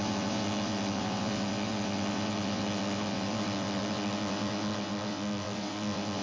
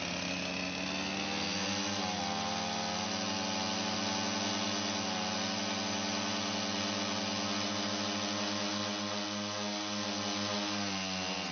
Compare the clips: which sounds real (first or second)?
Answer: second